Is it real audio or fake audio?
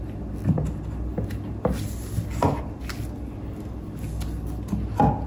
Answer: real